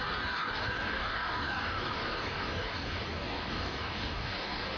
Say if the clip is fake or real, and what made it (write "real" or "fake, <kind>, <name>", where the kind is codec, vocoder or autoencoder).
fake, codec, DAC